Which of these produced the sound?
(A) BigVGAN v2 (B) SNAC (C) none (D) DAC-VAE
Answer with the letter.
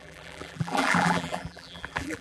A